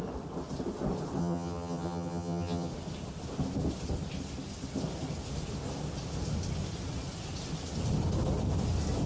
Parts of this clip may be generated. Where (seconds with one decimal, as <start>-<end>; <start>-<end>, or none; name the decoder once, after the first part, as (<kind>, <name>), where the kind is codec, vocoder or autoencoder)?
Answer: 1.2-2.7 (vocoder, HiFi-GAN)